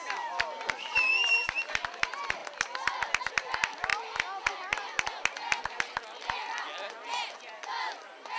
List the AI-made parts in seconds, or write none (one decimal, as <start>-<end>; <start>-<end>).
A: none